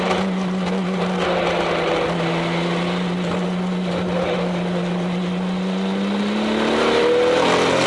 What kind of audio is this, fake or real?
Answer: real